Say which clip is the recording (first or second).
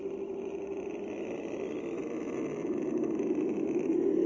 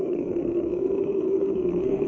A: first